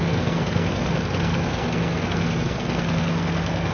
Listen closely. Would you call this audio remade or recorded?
remade